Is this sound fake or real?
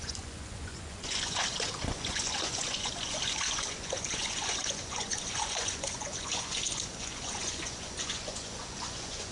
fake